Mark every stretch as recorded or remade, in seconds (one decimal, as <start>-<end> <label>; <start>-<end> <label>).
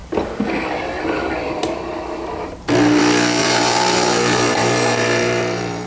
0.0-3.4 recorded; 3.4-5.9 remade